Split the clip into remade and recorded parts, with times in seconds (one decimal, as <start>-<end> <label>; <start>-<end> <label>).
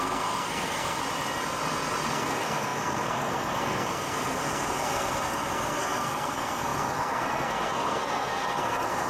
0.0-1.0 remade; 1.0-2.1 recorded; 2.1-9.1 remade